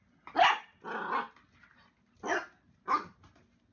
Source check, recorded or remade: recorded